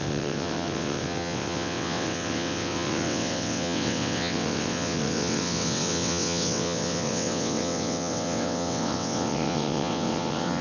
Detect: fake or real fake